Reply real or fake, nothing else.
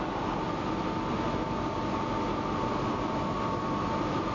real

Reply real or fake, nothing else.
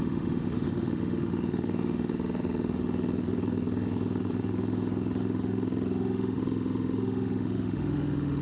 fake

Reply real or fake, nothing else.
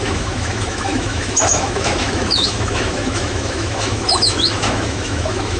fake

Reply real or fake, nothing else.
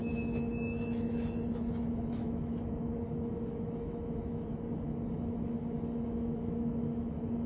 fake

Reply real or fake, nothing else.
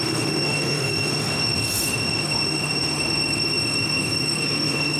fake